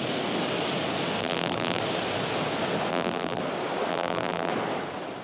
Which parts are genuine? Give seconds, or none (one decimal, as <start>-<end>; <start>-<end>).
0.0-1.2; 1.8-2.9; 3.4-3.9; 4.5-5.2